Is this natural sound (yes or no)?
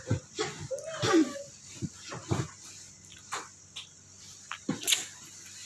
yes